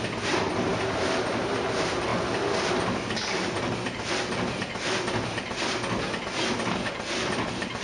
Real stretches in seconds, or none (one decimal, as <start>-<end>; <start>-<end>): 0.0-7.8

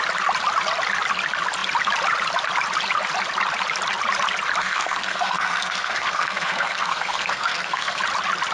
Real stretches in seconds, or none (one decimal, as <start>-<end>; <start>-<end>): 0.0-4.6; 8.0-8.5